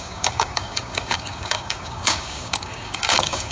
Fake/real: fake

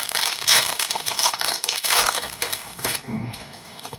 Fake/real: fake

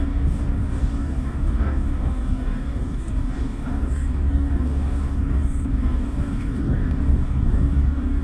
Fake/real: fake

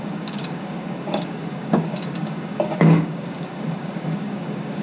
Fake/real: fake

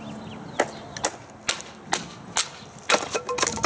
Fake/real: real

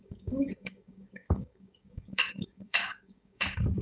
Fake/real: fake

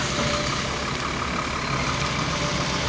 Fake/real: real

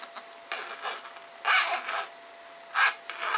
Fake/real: real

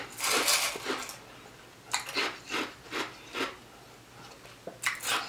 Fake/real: real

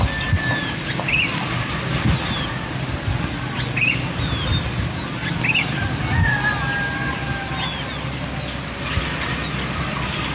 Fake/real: real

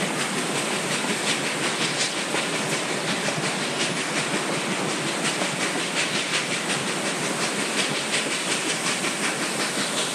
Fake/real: real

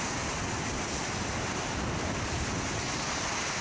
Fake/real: real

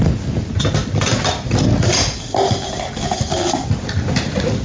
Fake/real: real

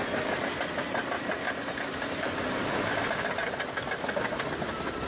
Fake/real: real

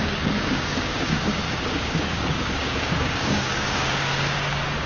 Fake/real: fake